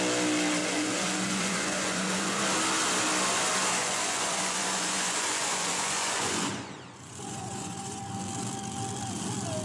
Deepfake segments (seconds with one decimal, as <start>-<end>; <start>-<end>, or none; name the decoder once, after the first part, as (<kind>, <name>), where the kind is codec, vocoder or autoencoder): 0.6-2.4 (vocoder, Vocos); 3.8-8.0